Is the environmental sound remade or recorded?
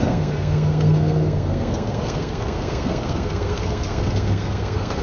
remade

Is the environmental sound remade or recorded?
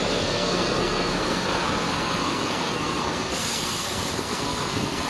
remade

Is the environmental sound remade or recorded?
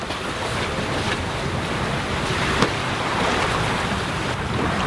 recorded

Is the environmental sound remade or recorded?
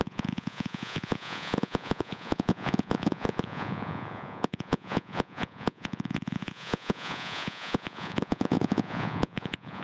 remade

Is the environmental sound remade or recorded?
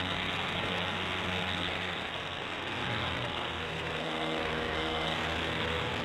remade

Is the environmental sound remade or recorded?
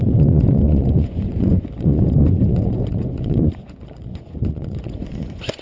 remade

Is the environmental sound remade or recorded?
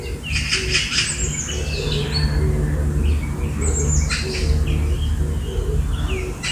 recorded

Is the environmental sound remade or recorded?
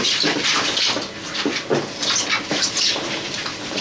recorded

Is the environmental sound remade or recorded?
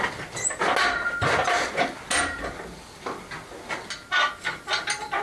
recorded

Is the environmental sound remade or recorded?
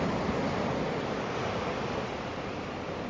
recorded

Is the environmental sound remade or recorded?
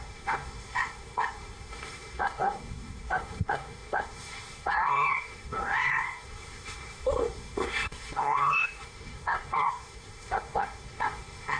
remade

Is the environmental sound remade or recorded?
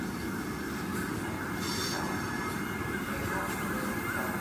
recorded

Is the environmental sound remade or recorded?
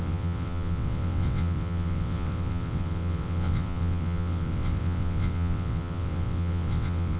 remade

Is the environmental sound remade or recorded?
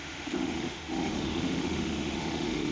remade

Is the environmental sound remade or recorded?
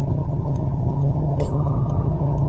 remade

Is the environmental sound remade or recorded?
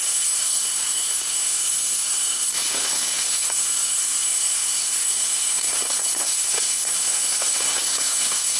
remade